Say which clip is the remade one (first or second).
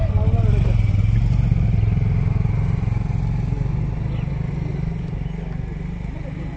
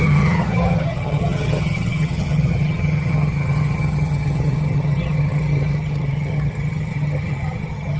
second